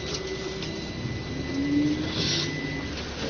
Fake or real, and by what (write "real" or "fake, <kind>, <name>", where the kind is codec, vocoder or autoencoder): real